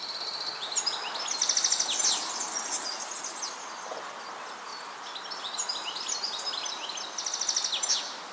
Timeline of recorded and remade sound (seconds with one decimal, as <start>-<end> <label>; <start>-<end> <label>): 0.0-8.3 recorded